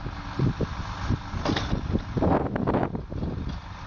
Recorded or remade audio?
recorded